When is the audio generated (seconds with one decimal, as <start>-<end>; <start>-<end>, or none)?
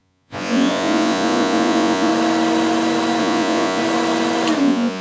0.0-2.1; 3.2-3.8; 4.6-5.0